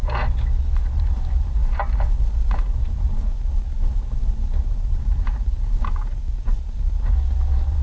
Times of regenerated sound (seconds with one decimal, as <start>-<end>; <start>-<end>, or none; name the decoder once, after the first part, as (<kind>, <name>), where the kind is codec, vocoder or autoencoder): 0.6-1.6 (vocoder, BigVGAN v2); 2.7-7.8